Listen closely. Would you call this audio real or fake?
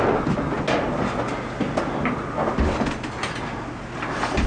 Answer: real